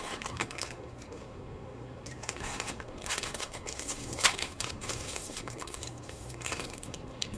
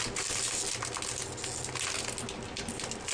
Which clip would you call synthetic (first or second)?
first